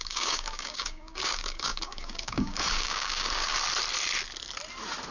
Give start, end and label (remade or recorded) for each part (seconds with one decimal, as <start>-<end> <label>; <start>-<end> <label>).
0.0-3.5 remade; 3.5-5.1 recorded